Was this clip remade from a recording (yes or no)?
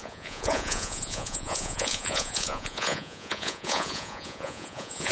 yes